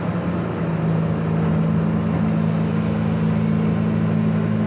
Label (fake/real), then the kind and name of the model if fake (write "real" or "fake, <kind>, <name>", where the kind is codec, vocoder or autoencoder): real